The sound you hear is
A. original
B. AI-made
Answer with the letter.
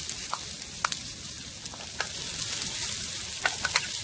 A